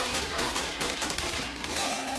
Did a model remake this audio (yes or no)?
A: yes